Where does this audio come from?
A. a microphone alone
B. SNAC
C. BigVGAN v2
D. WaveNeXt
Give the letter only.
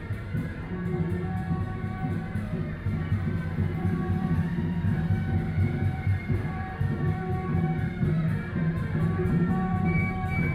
C